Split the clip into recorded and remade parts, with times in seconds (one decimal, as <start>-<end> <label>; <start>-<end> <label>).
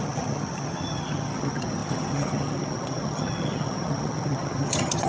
0.0-5.1 remade